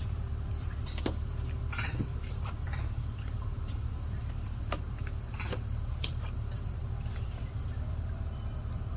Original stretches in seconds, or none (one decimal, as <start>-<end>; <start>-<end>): none